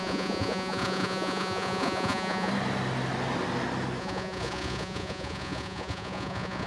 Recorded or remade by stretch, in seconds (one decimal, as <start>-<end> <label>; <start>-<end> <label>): 0.0-2.5 remade; 2.5-4.0 recorded; 4.0-6.7 remade

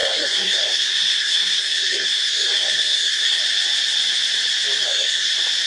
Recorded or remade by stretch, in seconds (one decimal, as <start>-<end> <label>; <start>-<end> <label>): 0.0-3.4 remade; 3.4-4.8 recorded; 4.8-5.3 remade; 5.3-5.7 recorded

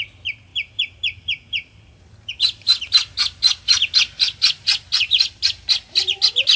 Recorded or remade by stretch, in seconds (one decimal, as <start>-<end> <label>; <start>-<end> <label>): 0.0-6.6 recorded